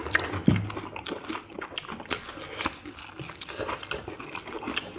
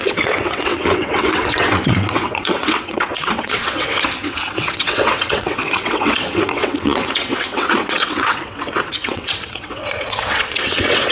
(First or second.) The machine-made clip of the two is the second